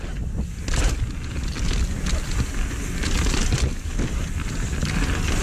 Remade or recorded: recorded